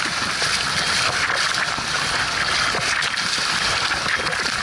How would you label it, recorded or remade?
recorded